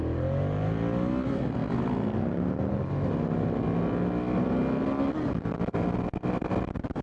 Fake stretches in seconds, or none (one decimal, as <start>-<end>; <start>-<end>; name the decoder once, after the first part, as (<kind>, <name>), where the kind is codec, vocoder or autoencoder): none